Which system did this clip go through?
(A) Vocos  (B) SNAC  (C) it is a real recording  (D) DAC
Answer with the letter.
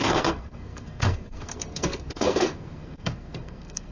B